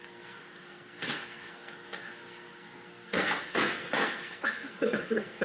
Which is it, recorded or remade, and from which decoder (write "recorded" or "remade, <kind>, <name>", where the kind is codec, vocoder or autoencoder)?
remade, codec, SNAC